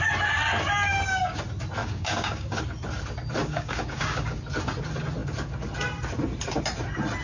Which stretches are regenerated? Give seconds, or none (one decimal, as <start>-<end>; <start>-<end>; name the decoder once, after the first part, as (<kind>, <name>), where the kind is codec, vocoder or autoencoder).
0.9-1.4 (codec, DAC); 1.8-2.6; 3.4-4.4